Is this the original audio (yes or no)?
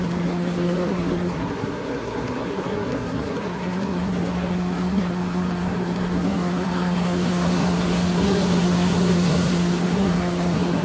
no